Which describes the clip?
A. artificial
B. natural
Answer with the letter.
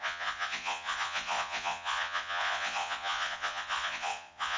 A